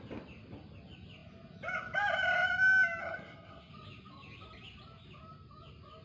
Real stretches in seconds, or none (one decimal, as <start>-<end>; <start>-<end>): 0.0-3.0; 3.7-6.0